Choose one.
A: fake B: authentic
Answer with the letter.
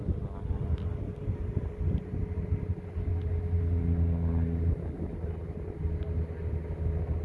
B